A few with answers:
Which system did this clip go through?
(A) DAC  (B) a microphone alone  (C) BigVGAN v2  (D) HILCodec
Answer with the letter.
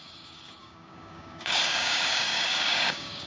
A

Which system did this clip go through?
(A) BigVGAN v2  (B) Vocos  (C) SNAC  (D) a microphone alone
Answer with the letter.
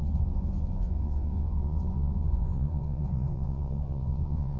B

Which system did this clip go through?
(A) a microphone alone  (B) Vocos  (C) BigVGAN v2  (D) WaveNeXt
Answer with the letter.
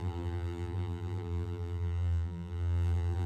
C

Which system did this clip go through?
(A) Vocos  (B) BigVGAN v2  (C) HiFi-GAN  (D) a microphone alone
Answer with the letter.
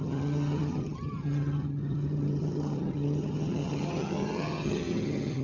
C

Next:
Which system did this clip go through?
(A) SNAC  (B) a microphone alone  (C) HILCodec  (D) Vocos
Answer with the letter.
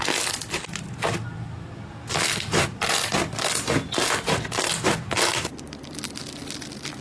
B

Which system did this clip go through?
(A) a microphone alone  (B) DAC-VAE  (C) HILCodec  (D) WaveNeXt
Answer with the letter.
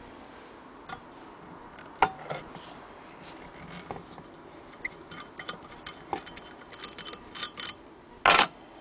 A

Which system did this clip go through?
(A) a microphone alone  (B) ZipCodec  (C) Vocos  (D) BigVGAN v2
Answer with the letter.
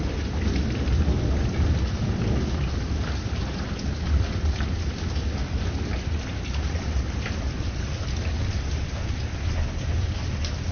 A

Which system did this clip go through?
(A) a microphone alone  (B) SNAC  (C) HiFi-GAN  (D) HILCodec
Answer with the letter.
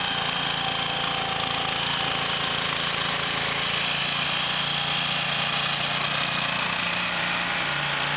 A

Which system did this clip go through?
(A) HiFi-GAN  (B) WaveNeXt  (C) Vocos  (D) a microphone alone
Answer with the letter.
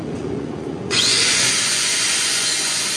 C